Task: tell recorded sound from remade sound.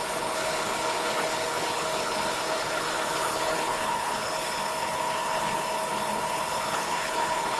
remade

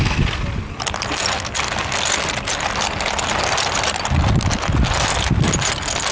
recorded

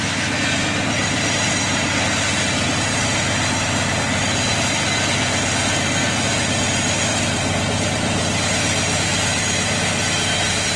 recorded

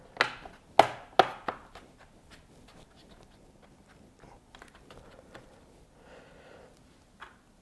recorded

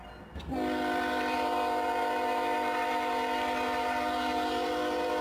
recorded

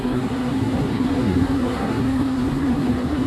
remade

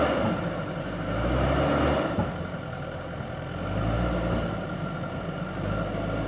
recorded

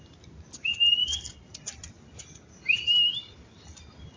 recorded